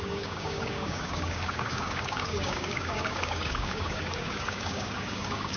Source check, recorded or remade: remade